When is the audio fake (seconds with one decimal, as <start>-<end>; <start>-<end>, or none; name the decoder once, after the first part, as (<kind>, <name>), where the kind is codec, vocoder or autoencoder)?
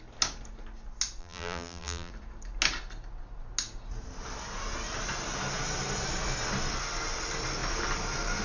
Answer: 1.2-2.1 (vocoder, BigVGAN v2)